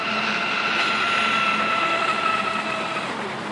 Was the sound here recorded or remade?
recorded